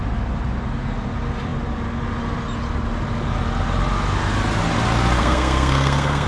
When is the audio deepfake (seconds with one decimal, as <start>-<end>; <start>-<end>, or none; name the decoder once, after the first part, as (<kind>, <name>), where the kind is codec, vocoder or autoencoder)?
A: 5.2-6.3 (codec, SNAC)